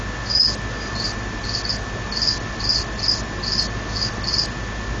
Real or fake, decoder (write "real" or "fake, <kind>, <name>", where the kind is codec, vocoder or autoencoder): real